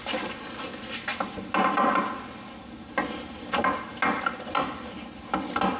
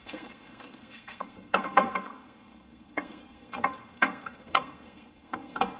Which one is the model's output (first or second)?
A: second